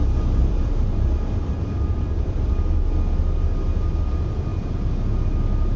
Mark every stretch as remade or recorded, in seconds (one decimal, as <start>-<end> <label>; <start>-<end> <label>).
0.0-0.4 recorded; 0.4-2.5 remade; 2.5-5.8 recorded